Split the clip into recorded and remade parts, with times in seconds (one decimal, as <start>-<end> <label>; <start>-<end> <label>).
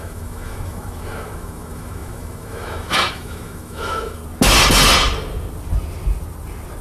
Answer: 0.0-4.2 remade; 4.2-6.8 recorded